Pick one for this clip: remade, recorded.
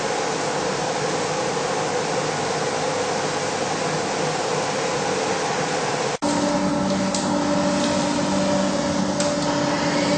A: recorded